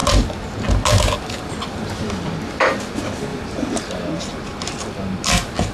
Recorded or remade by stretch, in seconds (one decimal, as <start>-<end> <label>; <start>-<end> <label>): 0.0-3.3 recorded; 3.3-4.8 remade; 4.8-5.7 recorded